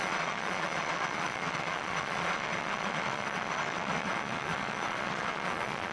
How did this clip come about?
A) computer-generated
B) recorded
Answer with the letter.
A